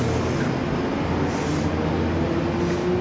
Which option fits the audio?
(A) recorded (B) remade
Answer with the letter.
A